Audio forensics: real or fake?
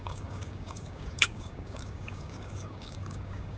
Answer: fake